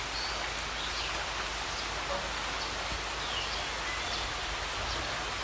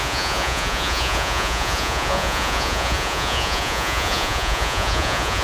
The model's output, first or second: second